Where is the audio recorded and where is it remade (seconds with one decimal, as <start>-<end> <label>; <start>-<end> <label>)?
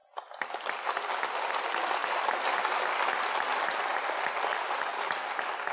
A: 0.0-5.7 recorded